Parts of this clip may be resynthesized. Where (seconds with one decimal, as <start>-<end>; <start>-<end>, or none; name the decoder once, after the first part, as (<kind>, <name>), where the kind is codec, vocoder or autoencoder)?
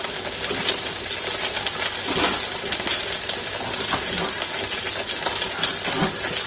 none